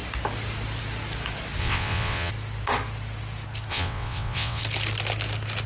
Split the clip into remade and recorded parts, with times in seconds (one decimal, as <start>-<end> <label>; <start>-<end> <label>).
0.0-1.6 recorded; 1.6-2.3 remade; 2.3-3.7 recorded; 3.7-4.6 remade; 4.6-5.7 recorded